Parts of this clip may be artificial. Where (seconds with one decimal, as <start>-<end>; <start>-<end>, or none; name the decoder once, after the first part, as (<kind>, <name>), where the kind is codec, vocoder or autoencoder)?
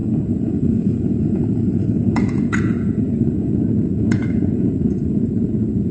0.0-3.5 (vocoder, Vocos); 3.9-5.9